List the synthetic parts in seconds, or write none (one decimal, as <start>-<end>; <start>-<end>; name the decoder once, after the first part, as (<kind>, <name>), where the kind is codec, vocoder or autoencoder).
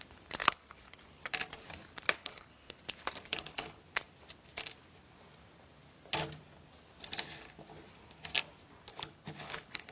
0.4-0.9 (codec, HILCodec); 2.2-2.8; 3.3-3.8; 8.9-9.9